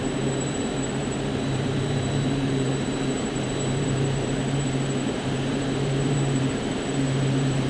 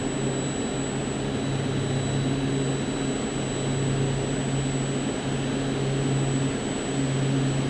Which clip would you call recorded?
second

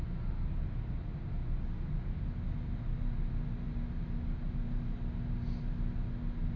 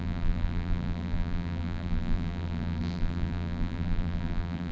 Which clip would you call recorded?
first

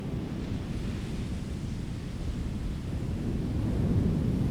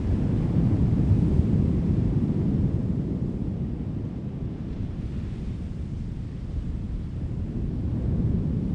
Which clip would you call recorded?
first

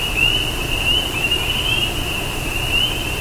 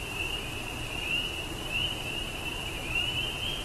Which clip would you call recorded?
first